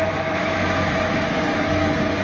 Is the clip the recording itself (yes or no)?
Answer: no